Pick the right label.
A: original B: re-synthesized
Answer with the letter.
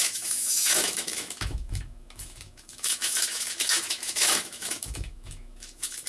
B